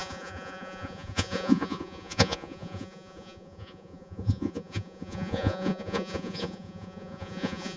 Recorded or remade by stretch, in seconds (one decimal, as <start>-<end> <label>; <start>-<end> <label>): 0.0-7.8 remade